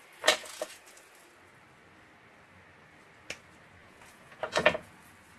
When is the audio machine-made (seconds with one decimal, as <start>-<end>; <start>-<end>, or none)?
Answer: 0.4-1.1; 3.8-4.9